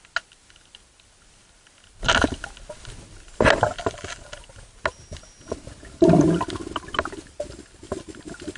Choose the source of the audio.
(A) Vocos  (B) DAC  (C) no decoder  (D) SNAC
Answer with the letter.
C